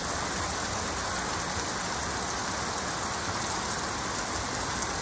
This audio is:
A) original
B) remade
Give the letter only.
A